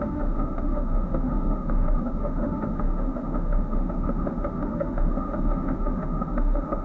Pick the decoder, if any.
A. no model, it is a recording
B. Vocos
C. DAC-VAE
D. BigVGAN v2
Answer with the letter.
C